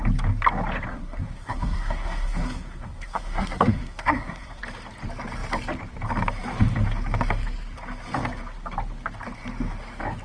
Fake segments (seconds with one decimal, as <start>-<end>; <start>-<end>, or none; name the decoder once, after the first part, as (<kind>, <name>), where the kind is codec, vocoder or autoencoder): 0.9-4.6 (codec, SNAC)